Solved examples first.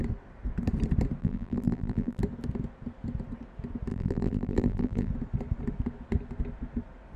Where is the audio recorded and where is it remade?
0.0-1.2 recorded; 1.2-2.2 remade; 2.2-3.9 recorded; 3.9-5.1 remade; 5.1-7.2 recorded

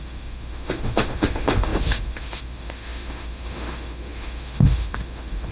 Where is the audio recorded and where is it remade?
0.0-5.5 remade

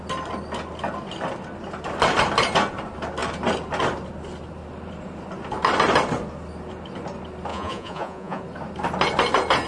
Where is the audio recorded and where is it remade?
0.0-7.5 recorded; 7.5-8.4 remade; 8.4-9.7 recorded

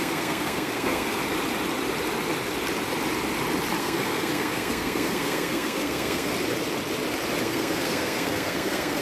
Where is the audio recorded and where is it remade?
0.0-1.2 remade; 1.2-3.8 recorded; 3.8-6.3 remade; 6.3-7.4 recorded; 7.4-9.0 remade

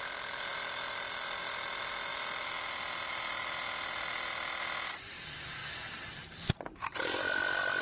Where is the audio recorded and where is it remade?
0.0-2.1 recorded; 2.1-3.1 remade; 3.1-5.6 recorded; 5.6-7.8 remade

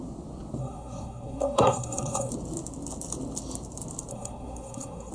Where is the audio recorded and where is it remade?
0.0-0.6 recorded; 0.6-2.3 remade; 2.3-4.1 recorded; 4.1-5.1 remade

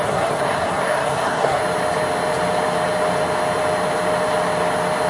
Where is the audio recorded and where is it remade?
0.0-1.6 remade; 1.6-5.1 recorded

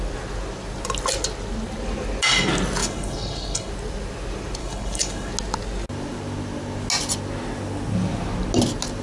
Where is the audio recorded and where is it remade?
0.0-2.8 recorded; 2.8-3.7 remade; 3.7-4.6 recorded; 4.6-5.3 remade; 5.3-9.0 recorded